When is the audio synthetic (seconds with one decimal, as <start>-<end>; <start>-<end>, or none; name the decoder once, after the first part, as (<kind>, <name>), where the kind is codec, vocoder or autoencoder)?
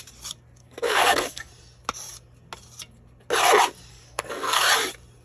0.6-1.5 (codec, SNAC); 3.9-4.6